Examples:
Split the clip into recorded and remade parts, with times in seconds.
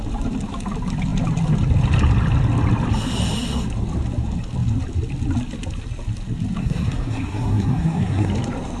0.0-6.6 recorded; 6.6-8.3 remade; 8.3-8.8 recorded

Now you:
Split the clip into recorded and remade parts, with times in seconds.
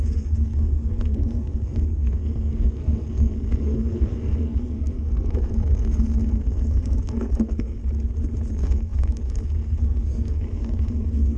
0.0-7.8 remade; 7.8-8.5 recorded; 8.5-11.4 remade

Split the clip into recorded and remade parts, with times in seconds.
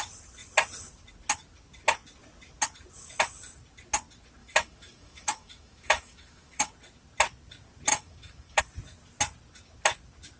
0.0-4.4 recorded; 4.4-6.7 remade; 6.7-7.9 recorded; 7.9-8.6 remade; 8.6-10.4 recorded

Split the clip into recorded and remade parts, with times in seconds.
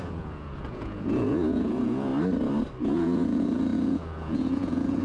0.0-2.1 remade; 2.1-2.8 recorded; 2.8-5.0 remade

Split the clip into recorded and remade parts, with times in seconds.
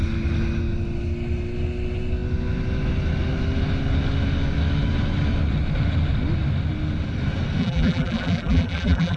0.0-7.6 recorded; 7.6-9.2 remade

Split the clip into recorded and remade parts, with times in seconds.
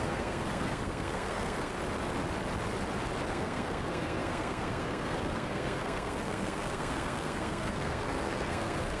0.0-1.7 remade; 1.7-3.3 recorded; 3.3-9.0 remade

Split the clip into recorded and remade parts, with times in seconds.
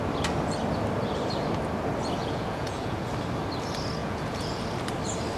0.0-2.2 recorded; 2.2-3.1 remade; 3.1-4.0 recorded; 4.0-4.6 remade; 4.6-5.4 recorded